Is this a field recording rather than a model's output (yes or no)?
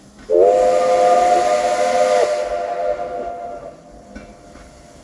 yes